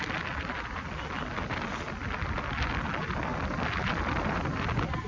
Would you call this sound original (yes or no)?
yes